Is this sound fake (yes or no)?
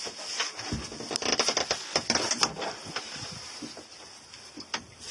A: no